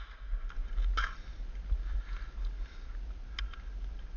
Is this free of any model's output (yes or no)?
yes